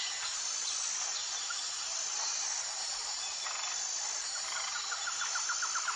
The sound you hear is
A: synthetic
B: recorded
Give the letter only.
B